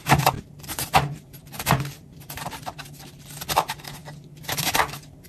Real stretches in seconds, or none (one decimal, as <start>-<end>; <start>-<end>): 2.8-5.3